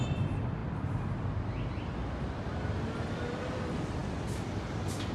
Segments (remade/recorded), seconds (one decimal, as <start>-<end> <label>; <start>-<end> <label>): 0.0-5.1 recorded